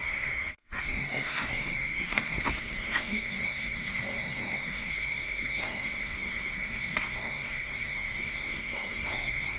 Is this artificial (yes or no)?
yes